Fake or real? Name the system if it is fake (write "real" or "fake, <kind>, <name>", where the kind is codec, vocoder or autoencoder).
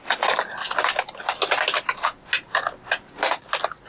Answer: real